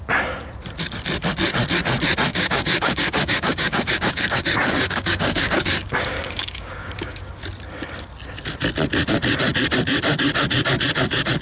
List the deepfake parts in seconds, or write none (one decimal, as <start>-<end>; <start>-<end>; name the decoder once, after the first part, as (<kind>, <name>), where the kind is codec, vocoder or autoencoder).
2.3-7.3 (codec, DAC)